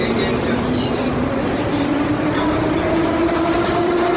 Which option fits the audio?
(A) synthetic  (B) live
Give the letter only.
B